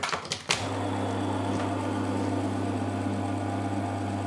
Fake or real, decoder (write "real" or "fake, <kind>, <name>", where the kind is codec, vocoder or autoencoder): real